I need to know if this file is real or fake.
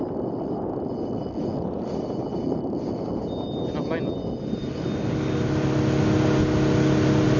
real